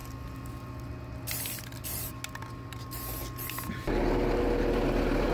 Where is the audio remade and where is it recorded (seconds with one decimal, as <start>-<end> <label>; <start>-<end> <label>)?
0.0-5.3 recorded

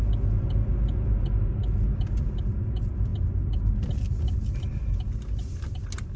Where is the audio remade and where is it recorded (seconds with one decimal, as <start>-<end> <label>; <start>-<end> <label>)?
0.0-6.2 recorded

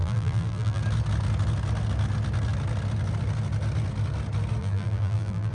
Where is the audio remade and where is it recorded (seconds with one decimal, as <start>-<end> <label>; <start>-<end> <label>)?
0.0-0.8 remade; 0.8-4.6 recorded; 4.6-5.5 remade